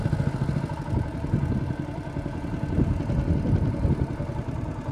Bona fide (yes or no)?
yes